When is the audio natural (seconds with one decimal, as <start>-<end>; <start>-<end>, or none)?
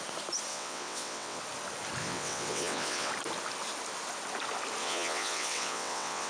0.0-0.5; 1.4-2.0; 3.1-4.8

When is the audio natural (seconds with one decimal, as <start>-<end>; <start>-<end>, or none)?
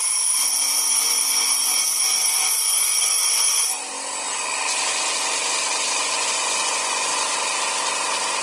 0.0-1.0; 1.8-6.0; 7.3-8.4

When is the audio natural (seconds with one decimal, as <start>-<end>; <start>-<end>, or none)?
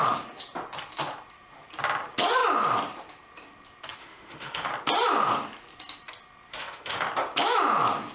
0.0-4.0; 4.7-6.5; 7.1-8.1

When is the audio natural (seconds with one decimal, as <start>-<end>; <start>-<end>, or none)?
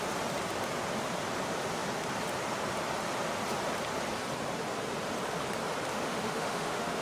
0.0-5.9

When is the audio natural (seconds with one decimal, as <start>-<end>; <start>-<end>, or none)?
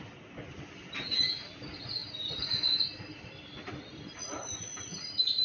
0.0-5.4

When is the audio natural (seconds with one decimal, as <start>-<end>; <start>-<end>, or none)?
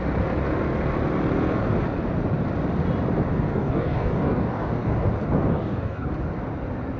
0.0-3.5; 4.9-5.5; 6.1-7.0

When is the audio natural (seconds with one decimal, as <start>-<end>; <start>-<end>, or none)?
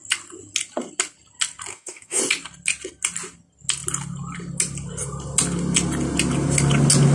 0.0-1.7; 2.2-7.1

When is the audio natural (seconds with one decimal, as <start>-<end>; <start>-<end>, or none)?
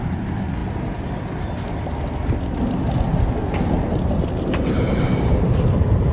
0.6-4.3